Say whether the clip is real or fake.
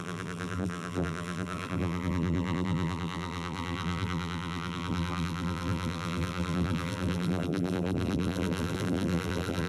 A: fake